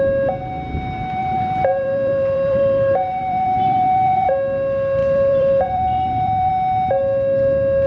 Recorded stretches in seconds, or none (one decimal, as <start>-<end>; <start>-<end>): 0.0-1.2; 4.3-5.0; 6.5-7.9